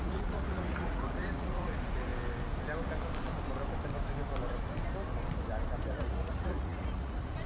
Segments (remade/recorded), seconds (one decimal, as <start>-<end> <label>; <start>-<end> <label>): 0.0-2.1 remade; 2.1-5.8 recorded; 5.8-7.5 remade